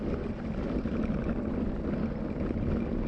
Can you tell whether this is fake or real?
real